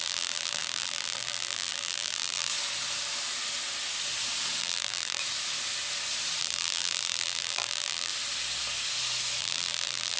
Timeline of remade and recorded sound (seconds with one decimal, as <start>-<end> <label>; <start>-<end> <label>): 0.0-2.5 remade; 2.5-4.6 recorded; 4.6-5.2 remade; 5.2-6.4 recorded; 6.4-8.1 remade; 8.1-9.4 recorded; 9.4-10.2 remade